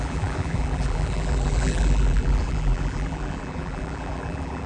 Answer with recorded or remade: remade